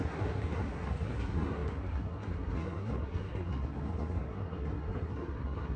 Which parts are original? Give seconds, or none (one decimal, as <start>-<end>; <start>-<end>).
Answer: none

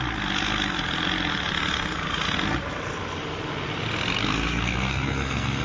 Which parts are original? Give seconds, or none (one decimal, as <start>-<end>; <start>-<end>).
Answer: 0.0-4.2

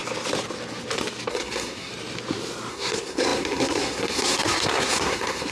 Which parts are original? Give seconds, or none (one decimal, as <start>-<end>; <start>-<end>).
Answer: 0.0-1.3; 1.9-2.7

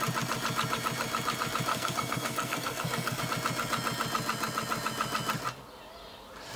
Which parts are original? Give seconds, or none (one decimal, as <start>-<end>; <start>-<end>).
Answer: 0.0-1.7; 3.2-6.6